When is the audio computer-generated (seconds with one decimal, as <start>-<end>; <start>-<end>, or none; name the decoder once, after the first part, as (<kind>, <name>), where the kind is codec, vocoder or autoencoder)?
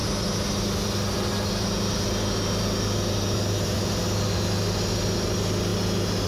none